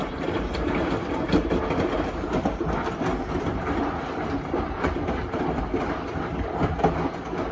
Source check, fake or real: fake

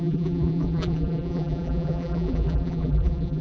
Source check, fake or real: fake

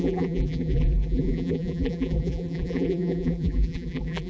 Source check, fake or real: fake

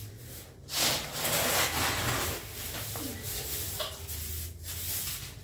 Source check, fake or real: real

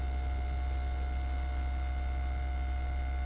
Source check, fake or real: real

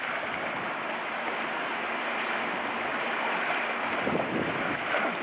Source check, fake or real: real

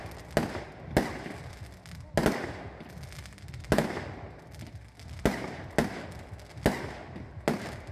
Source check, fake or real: real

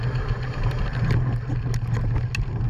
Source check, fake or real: real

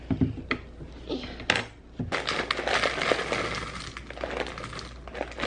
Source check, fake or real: real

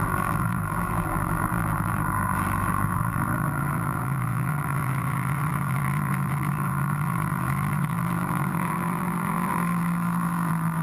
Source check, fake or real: fake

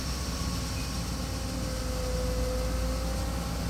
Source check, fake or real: real